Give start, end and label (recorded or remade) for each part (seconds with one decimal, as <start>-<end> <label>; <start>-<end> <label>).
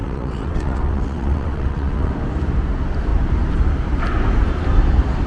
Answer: 0.0-2.1 remade; 2.1-5.3 recorded